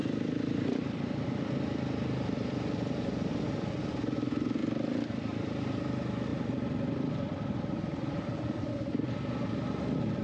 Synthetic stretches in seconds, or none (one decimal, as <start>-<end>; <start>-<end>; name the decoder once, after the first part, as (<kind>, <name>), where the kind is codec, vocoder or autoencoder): 0.0-3.7 (vocoder, BigVGAN v2); 4.6-5.8; 6.3-8.6